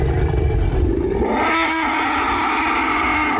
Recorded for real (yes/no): yes